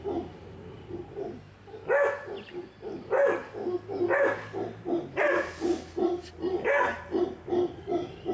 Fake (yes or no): no